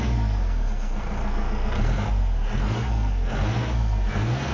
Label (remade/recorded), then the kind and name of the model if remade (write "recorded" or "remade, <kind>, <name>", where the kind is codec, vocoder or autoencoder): remade, codec, SNAC